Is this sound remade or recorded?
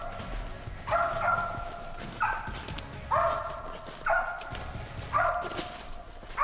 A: recorded